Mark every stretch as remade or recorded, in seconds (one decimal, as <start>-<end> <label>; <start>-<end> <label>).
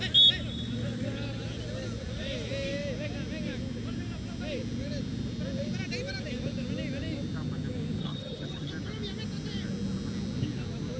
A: 0.0-8.0 recorded; 8.0-8.7 remade; 8.7-11.0 recorded